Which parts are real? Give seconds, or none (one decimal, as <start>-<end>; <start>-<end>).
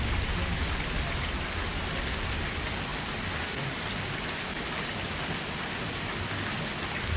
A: 0.0-7.2